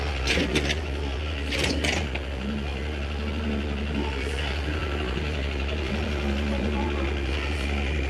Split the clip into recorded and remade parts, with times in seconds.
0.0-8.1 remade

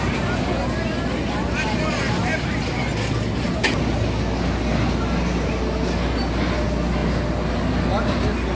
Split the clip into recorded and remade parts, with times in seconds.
0.0-8.5 recorded

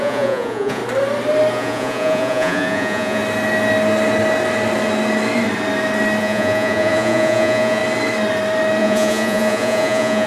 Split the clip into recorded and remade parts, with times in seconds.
0.0-0.8 remade; 0.8-1.5 recorded; 1.5-3.2 remade; 3.2-6.2 recorded; 6.2-7.8 remade; 7.8-8.8 recorded; 8.8-10.3 remade

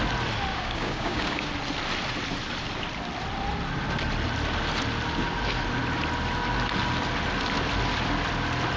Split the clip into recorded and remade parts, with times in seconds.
0.0-0.5 recorded; 0.5-1.5 remade; 1.5-8.8 recorded

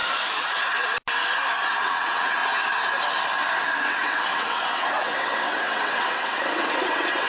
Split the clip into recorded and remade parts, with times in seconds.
0.0-1.8 recorded; 1.8-2.4 remade; 2.4-3.8 recorded; 3.8-7.3 remade